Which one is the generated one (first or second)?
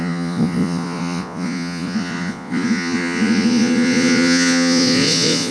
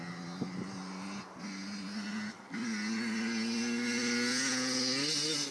first